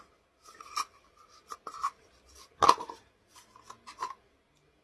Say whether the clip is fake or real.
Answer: real